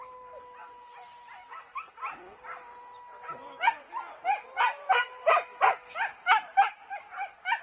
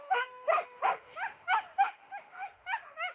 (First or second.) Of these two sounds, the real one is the first